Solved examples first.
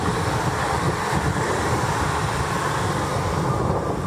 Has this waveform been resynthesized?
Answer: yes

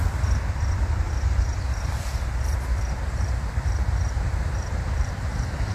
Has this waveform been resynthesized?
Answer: yes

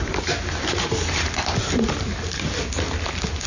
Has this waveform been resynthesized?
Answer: no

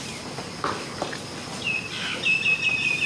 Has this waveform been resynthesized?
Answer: no